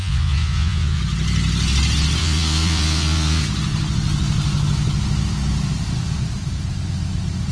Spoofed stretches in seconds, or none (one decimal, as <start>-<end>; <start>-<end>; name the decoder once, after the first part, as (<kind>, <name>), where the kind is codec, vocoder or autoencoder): 0.0-1.0 (vocoder, Vocos); 2.2-3.4